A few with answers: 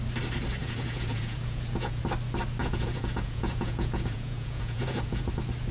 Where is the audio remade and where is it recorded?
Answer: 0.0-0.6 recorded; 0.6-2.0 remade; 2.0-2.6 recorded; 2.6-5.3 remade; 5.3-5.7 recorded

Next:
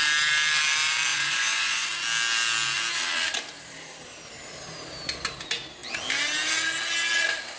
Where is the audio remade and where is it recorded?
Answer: 0.0-1.1 recorded; 1.1-1.9 remade; 1.9-7.6 recorded

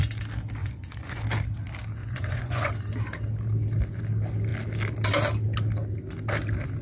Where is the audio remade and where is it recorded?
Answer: 0.0-0.6 recorded; 0.6-1.2 remade; 1.2-2.0 recorded; 2.0-2.7 remade; 2.7-6.8 recorded

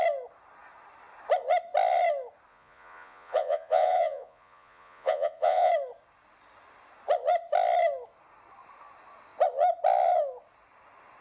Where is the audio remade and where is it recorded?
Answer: 0.0-2.5 recorded; 2.5-5.7 remade; 5.7-11.2 recorded